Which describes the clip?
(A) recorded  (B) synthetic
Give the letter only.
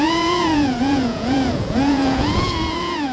B